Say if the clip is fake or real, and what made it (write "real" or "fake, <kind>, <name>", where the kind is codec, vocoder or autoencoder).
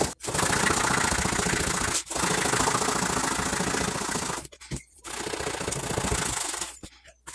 real